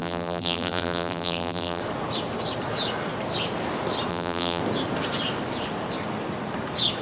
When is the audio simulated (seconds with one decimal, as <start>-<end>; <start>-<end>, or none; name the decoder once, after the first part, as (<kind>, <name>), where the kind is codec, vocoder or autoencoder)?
0.0-1.8 (vocoder, BigVGAN v2); 4.1-4.6